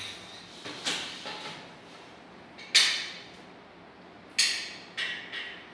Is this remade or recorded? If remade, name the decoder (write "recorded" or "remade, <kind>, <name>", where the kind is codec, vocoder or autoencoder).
recorded